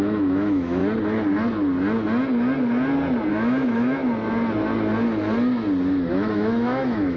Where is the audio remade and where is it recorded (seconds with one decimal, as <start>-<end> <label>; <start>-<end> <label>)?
0.0-0.8 remade; 0.8-3.3 recorded; 3.3-4.0 remade; 4.0-6.1 recorded; 6.1-7.2 remade